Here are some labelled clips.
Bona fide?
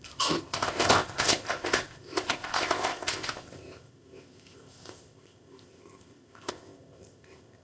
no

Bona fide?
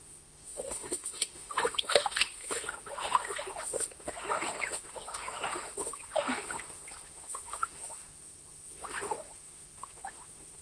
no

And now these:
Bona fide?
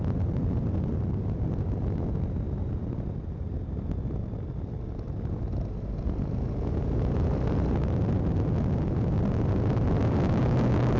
yes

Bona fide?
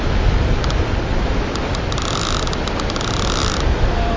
yes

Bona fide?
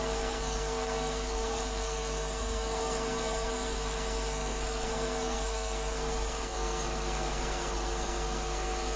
no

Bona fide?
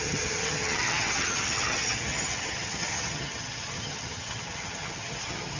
no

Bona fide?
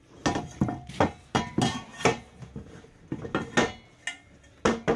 yes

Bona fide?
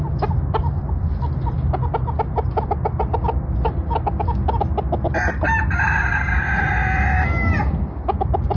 yes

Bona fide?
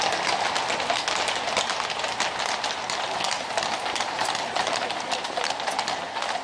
yes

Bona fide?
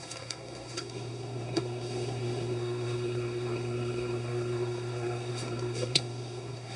no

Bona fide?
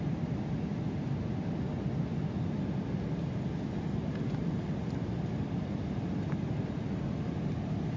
yes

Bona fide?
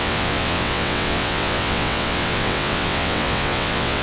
no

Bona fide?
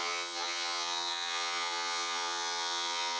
no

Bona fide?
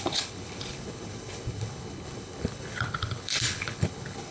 no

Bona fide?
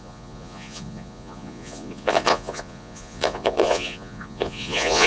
no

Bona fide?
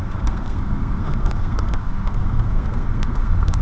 no